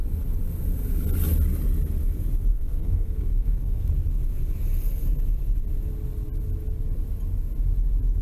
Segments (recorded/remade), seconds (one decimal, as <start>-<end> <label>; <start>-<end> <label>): 0.0-2.5 recorded; 2.5-3.9 remade; 3.9-8.2 recorded